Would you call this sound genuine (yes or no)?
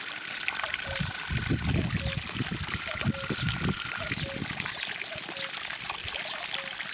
yes